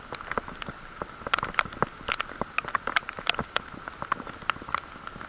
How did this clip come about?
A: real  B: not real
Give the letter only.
A